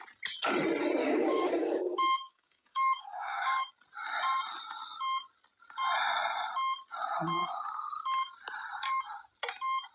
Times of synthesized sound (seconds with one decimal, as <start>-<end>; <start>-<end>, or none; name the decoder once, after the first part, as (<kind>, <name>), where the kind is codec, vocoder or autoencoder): 1.0-3.7 (codec, DAC)

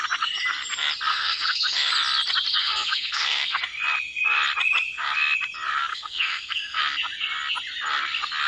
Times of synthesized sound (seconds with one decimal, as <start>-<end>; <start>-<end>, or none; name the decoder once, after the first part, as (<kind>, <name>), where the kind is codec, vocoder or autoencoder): 1.1-1.9 (codec, SNAC); 2.5-3.6; 5.9-6.8

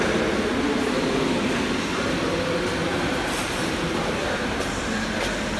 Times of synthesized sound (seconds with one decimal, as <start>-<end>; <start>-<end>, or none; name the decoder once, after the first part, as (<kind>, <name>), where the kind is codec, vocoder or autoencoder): 2.8-4.8 (vocoder, BigVGAN v2)

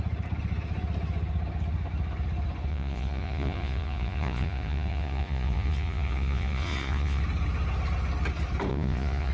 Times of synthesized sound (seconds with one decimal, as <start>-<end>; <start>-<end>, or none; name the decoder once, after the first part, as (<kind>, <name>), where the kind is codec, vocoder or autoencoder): 2.7-7.2 (vocoder, Vocos); 8.7-9.3

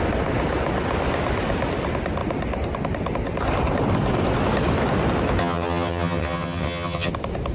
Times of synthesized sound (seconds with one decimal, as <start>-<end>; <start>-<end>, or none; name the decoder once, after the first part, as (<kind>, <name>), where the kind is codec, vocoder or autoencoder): 5.4-7.1 (vocoder, HiFi-GAN)